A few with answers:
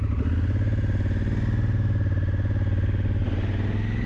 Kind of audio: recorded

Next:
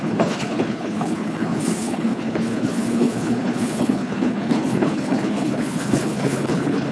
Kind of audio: remade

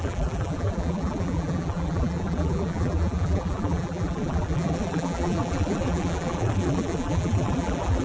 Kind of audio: remade